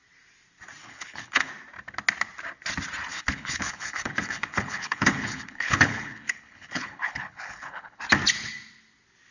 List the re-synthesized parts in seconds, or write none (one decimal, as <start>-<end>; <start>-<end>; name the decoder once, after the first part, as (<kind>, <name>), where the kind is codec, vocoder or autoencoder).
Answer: 0.8-1.5 (codec, HILCodec); 3.1-8.0